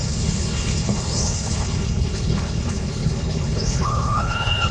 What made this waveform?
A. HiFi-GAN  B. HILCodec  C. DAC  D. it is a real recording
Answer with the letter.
B